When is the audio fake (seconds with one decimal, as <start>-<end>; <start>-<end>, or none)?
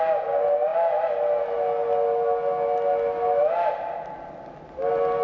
none